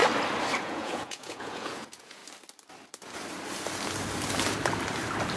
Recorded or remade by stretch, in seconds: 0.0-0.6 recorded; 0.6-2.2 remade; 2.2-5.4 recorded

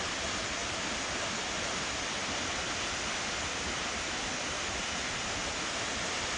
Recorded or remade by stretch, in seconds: 0.0-6.4 recorded

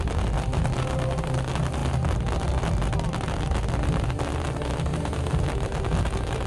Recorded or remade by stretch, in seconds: 0.0-6.5 recorded

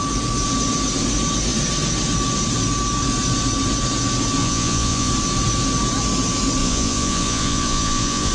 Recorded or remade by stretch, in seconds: 0.0-4.4 recorded; 4.4-5.1 remade; 5.1-6.6 recorded; 6.6-8.3 remade